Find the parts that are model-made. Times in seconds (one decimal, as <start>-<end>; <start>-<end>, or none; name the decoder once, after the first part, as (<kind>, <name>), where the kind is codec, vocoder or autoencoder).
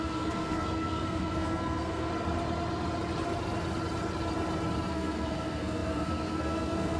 0.0-2.1 (codec, SNAC); 4.9-7.0